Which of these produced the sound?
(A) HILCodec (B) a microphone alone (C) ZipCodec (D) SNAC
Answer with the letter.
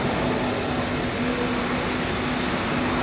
B